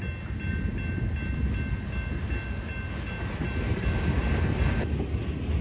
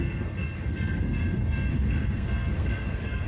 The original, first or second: first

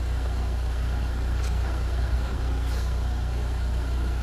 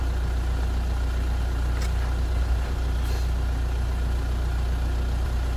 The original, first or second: second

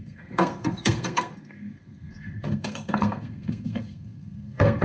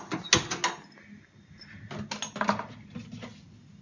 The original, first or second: second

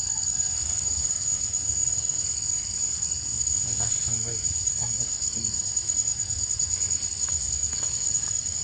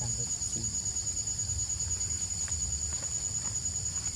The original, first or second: second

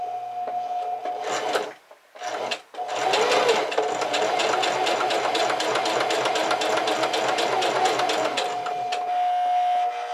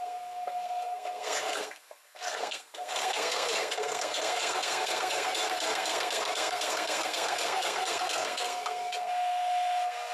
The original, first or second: first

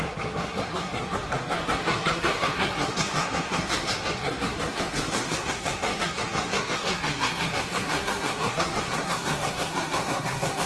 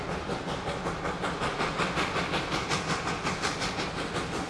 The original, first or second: second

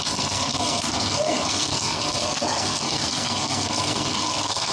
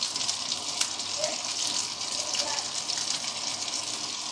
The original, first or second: second